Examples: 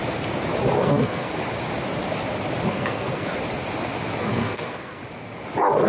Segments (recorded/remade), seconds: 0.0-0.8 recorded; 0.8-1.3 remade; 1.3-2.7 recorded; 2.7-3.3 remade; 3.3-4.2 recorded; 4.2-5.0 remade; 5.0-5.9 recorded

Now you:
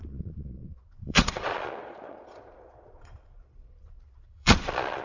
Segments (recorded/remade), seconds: 0.0-5.0 remade

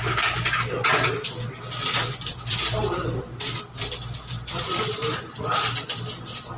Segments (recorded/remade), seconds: 0.0-2.3 recorded; 2.3-6.6 remade

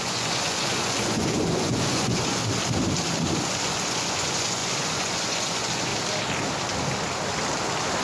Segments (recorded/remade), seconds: 0.0-2.4 remade; 2.4-3.3 recorded; 3.3-5.9 remade; 5.9-8.0 recorded

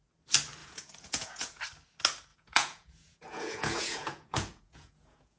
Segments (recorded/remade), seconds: 0.0-0.6 recorded; 0.6-1.6 remade; 1.6-2.3 recorded; 2.3-5.4 remade